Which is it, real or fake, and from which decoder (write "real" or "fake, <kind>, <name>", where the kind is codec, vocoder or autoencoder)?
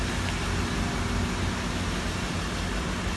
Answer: real